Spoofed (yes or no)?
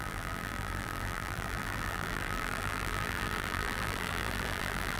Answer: yes